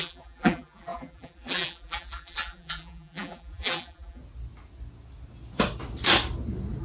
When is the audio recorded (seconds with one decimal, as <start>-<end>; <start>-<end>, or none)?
4.2-6.8